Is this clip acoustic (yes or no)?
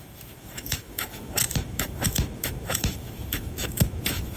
no